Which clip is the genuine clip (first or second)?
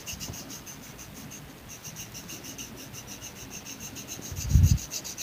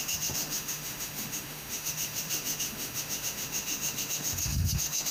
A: first